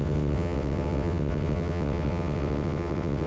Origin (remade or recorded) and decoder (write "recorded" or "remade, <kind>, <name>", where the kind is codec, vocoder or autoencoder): remade, vocoder, WaveNeXt